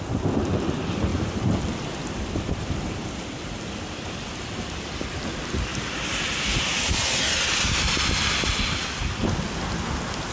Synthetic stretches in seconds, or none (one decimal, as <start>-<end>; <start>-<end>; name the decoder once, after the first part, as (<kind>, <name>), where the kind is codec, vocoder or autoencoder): 1.1-4.8 (vocoder, BigVGAN v2); 5.7-9.0